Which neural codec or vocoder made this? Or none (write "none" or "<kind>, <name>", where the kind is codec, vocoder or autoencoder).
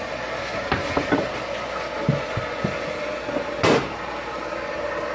none